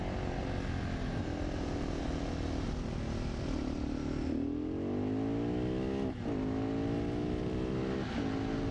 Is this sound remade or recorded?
recorded